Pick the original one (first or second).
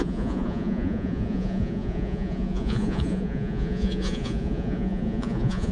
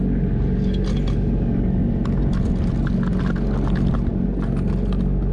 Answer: second